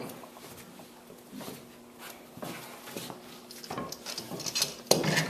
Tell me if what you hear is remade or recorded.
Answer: recorded